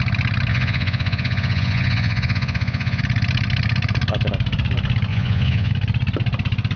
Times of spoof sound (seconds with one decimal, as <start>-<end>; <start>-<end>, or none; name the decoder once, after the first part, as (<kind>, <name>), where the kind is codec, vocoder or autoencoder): 0.5-3.0 (vocoder, Vocos); 5.1-5.7